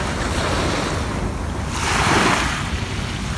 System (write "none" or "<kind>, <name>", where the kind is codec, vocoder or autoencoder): none